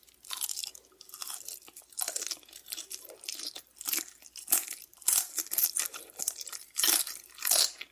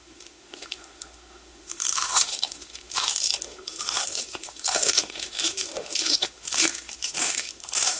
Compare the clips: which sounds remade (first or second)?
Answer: second